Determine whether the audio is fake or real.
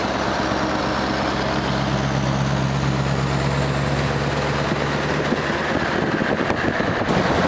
real